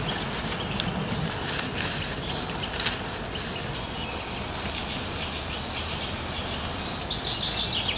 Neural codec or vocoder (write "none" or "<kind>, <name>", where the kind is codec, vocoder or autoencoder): none